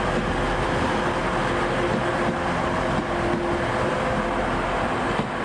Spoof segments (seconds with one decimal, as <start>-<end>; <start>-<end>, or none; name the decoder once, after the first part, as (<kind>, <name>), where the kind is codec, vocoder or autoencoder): none